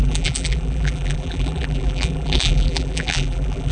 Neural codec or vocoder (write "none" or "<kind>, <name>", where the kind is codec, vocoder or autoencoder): vocoder, BigVGAN v2